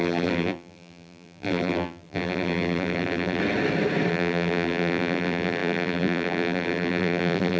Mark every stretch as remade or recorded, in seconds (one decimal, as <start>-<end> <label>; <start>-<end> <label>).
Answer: 0.0-3.4 remade; 3.4-4.1 recorded; 4.1-7.6 remade